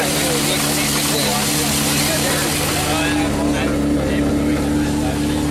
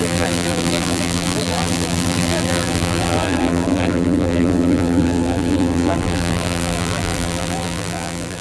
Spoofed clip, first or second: second